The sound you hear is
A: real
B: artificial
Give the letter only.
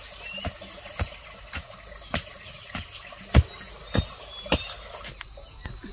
A